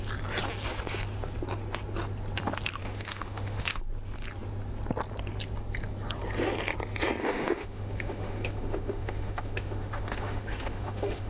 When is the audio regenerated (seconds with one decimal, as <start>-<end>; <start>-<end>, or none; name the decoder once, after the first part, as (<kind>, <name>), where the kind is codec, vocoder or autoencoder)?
2.8-3.8 (autoencoder, DAC-VAE); 7.2-11.3